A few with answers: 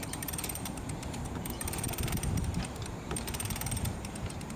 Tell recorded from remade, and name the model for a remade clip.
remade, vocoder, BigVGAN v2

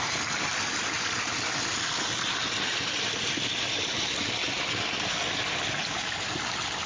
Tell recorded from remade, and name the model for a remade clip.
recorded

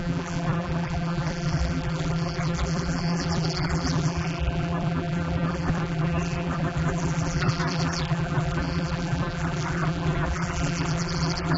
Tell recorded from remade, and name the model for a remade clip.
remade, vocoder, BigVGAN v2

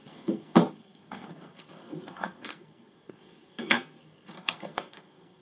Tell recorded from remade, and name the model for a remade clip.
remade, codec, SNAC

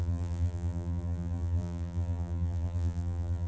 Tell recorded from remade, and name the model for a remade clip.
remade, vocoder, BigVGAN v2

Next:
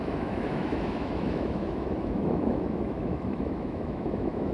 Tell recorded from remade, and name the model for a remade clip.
remade, autoencoder, DAC-VAE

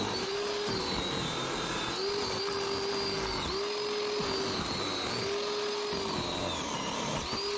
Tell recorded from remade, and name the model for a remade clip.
recorded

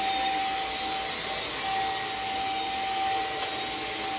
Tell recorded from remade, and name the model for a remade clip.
recorded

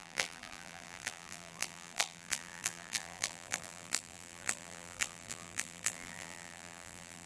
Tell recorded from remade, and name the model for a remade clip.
remade, vocoder, BigVGAN v2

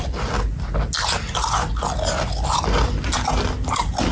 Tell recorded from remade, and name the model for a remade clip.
recorded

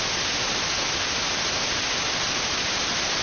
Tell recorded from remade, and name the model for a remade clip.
recorded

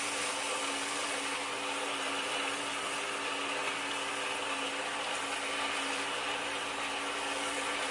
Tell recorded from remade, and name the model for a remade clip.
recorded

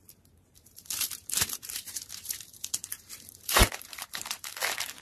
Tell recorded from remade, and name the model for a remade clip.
remade, vocoder, BigVGAN v2